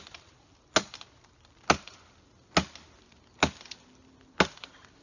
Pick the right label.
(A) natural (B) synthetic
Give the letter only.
A